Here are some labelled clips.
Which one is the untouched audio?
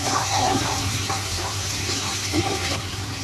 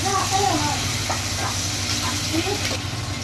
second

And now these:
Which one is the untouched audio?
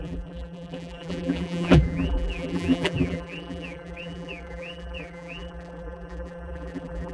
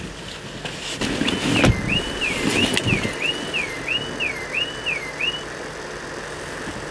second